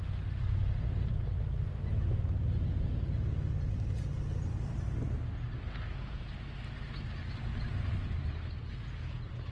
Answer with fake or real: real